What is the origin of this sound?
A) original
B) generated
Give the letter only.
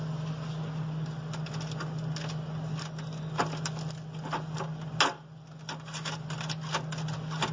A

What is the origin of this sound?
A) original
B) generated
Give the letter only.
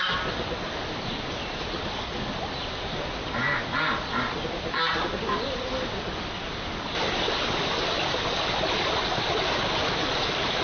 A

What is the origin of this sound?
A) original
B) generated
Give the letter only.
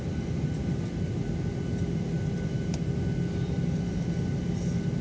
A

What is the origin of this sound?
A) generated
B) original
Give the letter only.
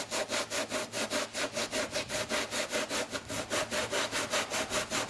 B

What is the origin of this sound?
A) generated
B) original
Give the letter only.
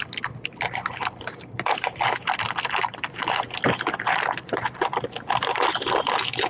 A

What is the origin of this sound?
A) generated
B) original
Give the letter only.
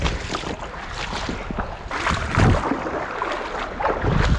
B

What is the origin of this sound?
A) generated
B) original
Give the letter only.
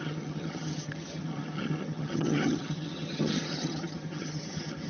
A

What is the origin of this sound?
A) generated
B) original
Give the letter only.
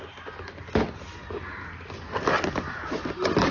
B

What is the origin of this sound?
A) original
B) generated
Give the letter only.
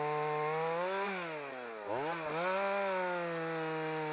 A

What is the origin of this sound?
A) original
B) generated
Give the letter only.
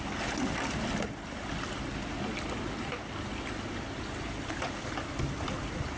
A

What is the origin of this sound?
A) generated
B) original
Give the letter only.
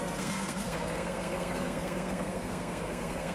A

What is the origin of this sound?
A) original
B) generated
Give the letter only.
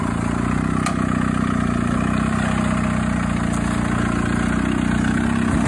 A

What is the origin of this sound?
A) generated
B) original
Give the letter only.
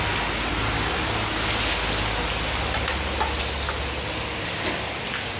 B